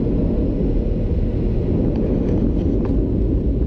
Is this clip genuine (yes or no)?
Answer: yes